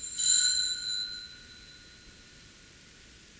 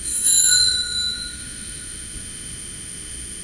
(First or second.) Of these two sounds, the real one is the first